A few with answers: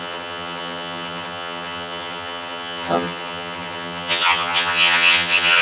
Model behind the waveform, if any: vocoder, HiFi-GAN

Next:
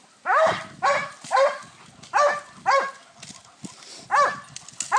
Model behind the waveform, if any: none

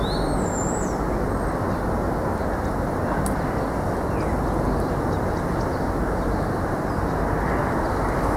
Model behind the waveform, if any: none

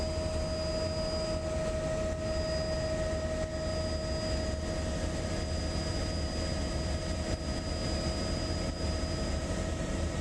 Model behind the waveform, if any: none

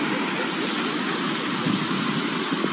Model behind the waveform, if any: none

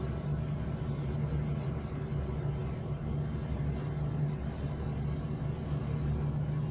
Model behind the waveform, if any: none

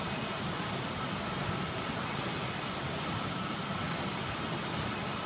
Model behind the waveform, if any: none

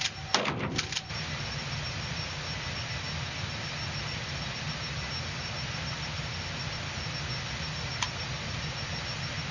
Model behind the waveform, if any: none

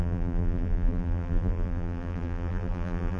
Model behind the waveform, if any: vocoder, BigVGAN v2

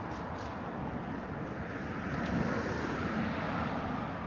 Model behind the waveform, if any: none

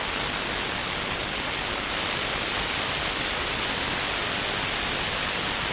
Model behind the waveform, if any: none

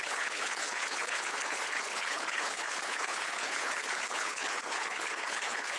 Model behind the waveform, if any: codec, HILCodec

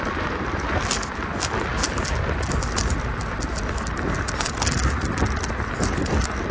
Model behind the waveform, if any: none